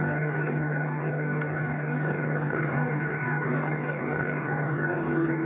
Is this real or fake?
fake